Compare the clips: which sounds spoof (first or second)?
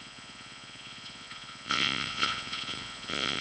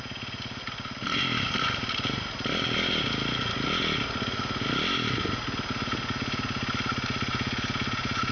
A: first